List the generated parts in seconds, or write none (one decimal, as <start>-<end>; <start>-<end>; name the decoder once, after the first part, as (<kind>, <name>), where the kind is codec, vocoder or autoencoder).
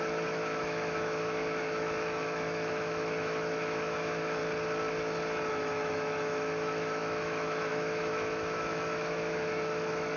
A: 0.0-4.4 (autoencoder, DAC-VAE); 5.5-10.2